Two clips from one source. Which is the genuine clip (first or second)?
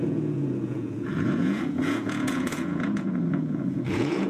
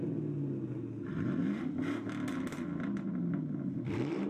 second